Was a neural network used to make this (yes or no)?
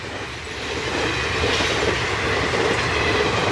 no